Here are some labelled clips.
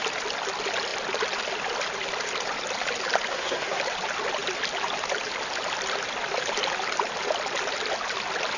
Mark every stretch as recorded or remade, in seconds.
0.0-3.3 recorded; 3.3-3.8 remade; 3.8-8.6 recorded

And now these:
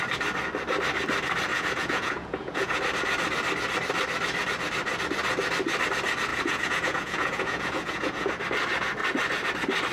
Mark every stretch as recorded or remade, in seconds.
0.0-1.5 recorded; 1.5-2.8 remade; 2.8-6.3 recorded; 6.3-8.3 remade; 8.3-9.9 recorded

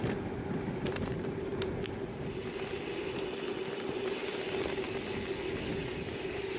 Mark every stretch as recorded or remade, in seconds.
0.0-1.5 remade; 1.5-5.5 recorded; 5.5-6.6 remade

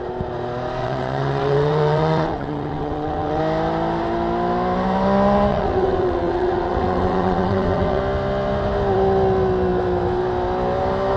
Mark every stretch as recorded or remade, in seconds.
0.0-0.8 recorded; 0.8-3.4 remade; 3.4-5.5 recorded; 5.5-8.0 remade; 8.0-11.2 recorded